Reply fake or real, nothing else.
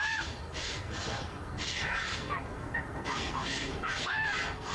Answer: fake